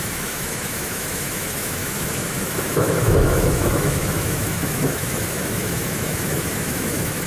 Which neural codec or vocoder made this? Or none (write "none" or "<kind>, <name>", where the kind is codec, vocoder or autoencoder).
autoencoder, DAC-VAE